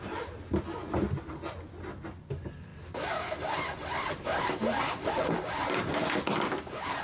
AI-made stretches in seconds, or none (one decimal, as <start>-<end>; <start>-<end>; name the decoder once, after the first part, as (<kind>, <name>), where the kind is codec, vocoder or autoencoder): none